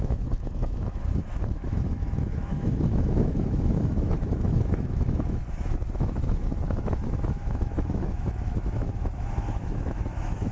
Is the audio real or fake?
fake